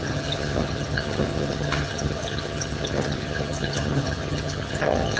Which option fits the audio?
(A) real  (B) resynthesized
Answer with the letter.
B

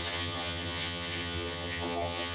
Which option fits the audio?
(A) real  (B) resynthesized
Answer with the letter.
B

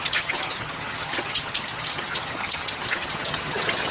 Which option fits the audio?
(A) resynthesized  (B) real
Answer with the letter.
A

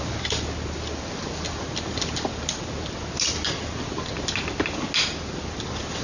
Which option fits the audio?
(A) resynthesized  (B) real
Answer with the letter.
B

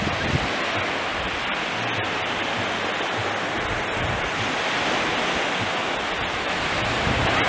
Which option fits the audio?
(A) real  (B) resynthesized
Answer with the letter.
A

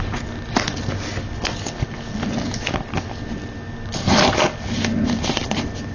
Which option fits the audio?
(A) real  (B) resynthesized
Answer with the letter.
A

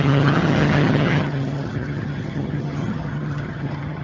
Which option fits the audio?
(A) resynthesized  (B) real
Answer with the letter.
A